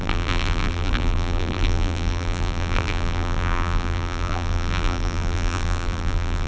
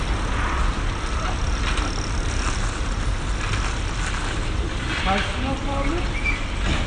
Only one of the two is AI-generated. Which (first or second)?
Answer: first